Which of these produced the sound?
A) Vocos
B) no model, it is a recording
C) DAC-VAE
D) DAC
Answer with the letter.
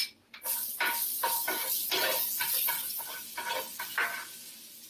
B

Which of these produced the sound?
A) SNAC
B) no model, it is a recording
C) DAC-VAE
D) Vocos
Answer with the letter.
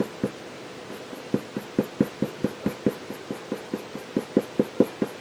B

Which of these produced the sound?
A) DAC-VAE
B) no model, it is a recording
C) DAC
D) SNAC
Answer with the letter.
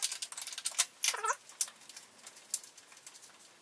B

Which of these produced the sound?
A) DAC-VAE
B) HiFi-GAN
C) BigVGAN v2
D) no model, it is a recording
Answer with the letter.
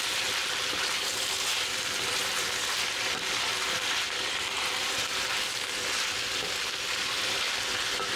C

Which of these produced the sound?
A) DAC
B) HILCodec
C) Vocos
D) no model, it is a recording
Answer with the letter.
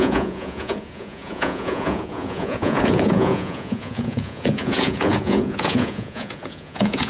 C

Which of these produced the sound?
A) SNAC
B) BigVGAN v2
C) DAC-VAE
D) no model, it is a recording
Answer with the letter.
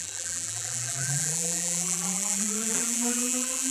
B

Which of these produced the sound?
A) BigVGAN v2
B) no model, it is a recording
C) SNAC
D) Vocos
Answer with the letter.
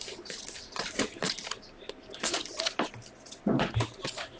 B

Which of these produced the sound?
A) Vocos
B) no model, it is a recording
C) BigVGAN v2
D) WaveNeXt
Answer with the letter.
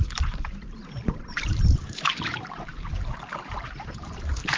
C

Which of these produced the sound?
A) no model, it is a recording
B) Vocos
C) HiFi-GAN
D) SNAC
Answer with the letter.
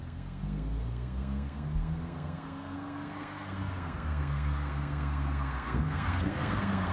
D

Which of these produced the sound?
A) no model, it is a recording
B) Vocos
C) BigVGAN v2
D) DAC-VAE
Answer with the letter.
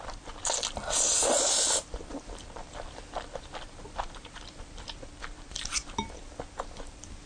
C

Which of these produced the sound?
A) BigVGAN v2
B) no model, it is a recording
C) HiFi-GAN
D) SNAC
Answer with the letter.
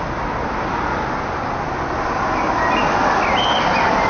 B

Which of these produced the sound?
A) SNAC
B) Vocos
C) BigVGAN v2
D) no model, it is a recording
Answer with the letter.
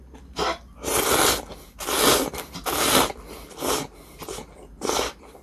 D